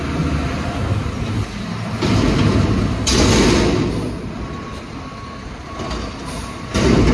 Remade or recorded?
recorded